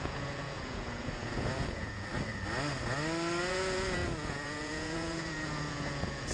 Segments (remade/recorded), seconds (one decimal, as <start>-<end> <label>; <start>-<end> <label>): 0.0-2.1 remade; 2.1-3.5 recorded; 3.5-6.3 remade